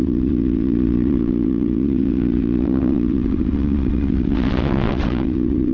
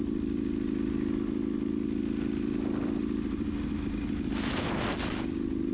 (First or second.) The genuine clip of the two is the second